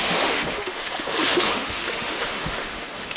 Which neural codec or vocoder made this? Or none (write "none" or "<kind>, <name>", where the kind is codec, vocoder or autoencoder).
autoencoder, DAC-VAE